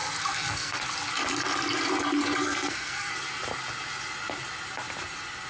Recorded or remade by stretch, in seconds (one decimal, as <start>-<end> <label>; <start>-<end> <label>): 0.0-0.8 remade; 0.8-2.4 recorded; 2.4-3.1 remade; 3.1-5.5 recorded